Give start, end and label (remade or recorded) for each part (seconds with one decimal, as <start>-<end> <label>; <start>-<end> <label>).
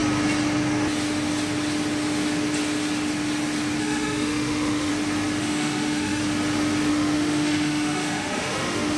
0.0-3.8 recorded; 3.8-4.9 remade; 4.9-5.4 recorded; 5.4-6.2 remade; 6.2-6.9 recorded; 6.9-9.0 remade